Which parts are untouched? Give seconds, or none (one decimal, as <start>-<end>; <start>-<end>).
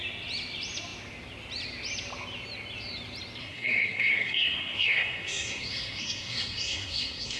0.0-3.4